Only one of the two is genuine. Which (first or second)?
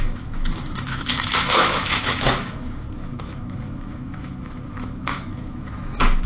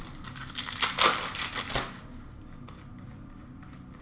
second